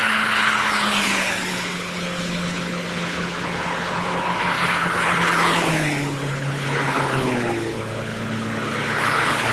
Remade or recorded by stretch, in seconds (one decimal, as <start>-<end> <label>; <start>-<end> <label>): 0.0-9.5 remade